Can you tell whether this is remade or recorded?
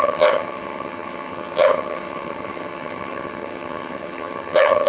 remade